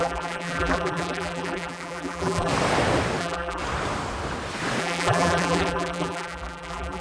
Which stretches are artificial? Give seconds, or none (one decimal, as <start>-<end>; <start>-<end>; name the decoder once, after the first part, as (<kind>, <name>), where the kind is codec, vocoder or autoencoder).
0.0-2.5 (vocoder, BigVGAN v2); 3.2-3.6; 4.8-7.0